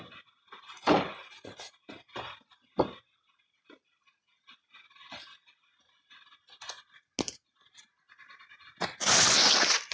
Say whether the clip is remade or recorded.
recorded